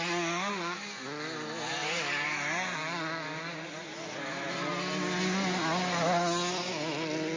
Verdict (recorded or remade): recorded